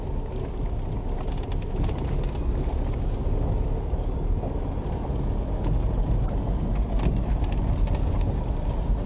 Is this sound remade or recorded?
recorded